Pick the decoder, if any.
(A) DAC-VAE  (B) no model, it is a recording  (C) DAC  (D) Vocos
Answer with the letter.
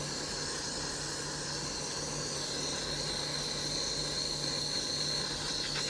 B